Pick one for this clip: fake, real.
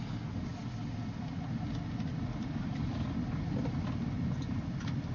real